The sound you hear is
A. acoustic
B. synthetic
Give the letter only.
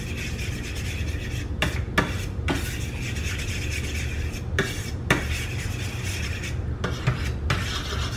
A